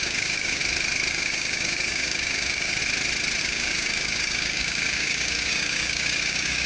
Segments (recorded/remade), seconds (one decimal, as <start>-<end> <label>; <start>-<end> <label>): 0.0-0.6 remade; 0.6-1.1 recorded; 1.1-2.8 remade; 2.8-3.4 recorded; 3.4-6.7 remade